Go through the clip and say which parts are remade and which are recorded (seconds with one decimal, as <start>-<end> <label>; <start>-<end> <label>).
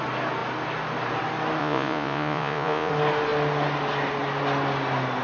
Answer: 0.0-1.6 recorded; 1.6-2.9 remade; 2.9-5.2 recorded